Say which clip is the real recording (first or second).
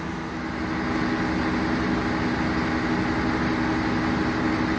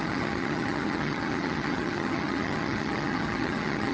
first